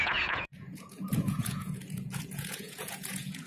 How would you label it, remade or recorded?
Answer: remade